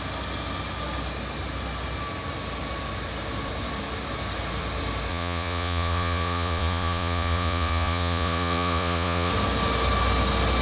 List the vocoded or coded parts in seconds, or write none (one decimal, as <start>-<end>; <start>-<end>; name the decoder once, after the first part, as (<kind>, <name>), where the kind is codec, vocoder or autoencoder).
5.1-9.3 (vocoder, Vocos)